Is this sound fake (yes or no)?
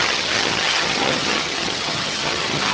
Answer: yes